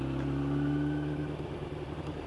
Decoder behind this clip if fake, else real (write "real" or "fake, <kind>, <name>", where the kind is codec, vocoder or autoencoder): real